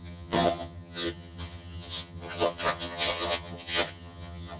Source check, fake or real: fake